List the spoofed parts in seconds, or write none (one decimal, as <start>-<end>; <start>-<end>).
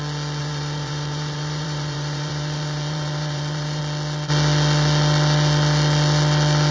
0.4-3.8